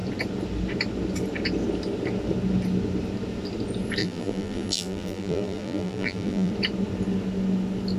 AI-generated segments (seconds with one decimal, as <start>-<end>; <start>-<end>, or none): 4.0-6.5